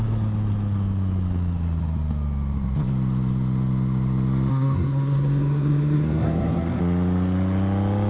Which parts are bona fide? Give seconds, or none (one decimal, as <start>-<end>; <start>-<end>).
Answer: 0.0-4.5; 6.8-8.1